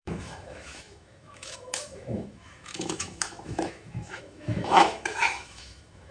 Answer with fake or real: fake